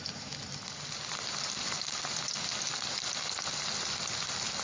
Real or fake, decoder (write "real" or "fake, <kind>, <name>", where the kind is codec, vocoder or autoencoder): real